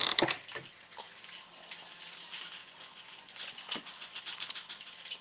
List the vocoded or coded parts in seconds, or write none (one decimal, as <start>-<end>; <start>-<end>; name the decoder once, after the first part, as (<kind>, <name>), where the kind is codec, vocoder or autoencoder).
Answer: 2.6-4.2 (vocoder, Vocos)